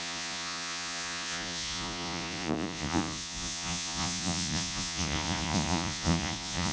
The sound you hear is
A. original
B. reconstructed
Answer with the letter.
B